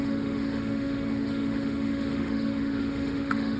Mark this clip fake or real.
fake